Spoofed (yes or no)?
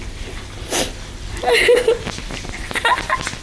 no